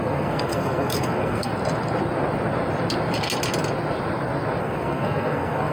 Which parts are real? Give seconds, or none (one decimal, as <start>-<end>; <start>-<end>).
1.5-4.6

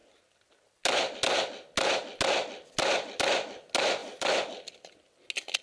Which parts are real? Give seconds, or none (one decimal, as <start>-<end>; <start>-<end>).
0.0-4.0; 4.9-5.6